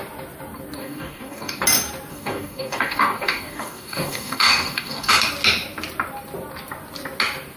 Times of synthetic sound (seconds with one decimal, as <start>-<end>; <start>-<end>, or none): 0.8-1.6; 2.1-5.1

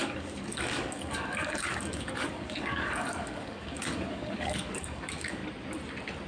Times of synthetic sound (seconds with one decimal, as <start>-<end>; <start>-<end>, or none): 0.0-5.4